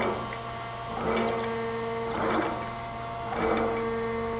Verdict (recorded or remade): recorded